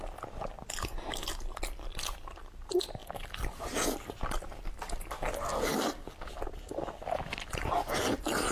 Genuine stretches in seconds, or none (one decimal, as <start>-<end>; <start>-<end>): 0.0-8.5